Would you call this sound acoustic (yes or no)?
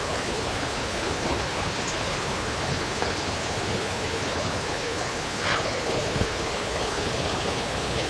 no